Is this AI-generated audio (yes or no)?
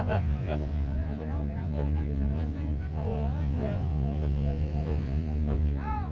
yes